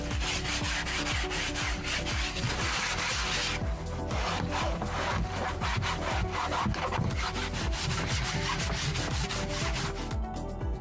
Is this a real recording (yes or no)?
yes